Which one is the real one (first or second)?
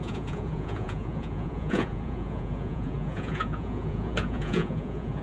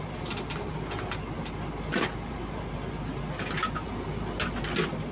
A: second